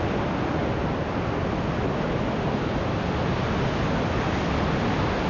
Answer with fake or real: real